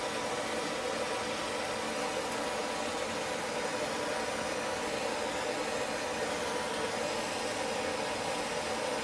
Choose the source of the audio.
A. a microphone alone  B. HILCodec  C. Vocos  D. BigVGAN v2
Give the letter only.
A